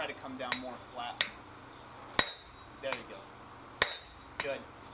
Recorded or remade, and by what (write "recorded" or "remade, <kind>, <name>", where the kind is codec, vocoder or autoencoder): recorded